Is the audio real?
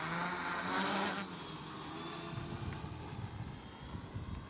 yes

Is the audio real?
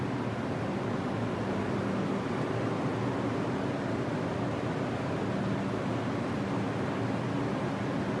yes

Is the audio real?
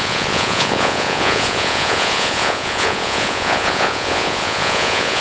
no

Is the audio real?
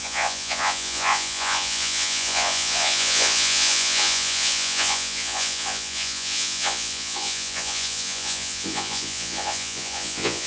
no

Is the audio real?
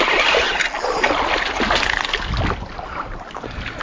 yes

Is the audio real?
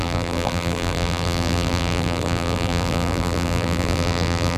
no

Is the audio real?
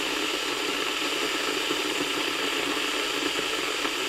yes